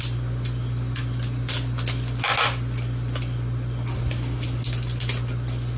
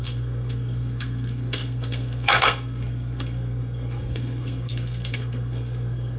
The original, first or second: first